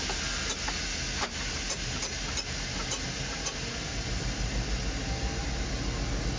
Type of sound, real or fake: real